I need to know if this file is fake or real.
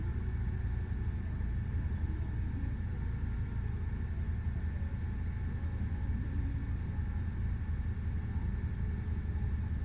real